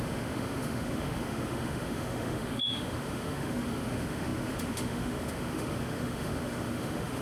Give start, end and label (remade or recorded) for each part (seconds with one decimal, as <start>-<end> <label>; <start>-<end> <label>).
0.0-7.2 remade